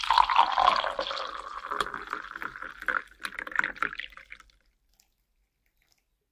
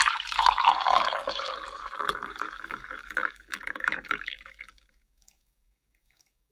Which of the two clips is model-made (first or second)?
second